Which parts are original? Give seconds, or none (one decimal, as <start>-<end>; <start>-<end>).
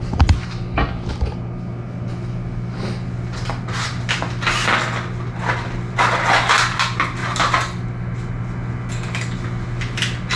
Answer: 0.0-10.4